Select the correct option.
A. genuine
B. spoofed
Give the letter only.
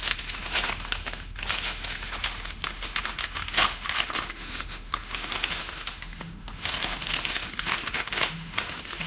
B